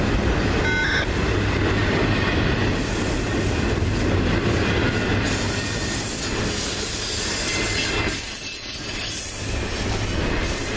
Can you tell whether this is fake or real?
real